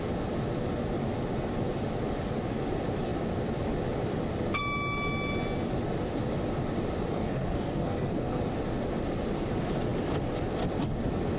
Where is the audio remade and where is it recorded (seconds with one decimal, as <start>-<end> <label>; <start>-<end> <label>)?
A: 0.0-7.1 recorded; 7.1-8.4 remade; 8.4-11.4 recorded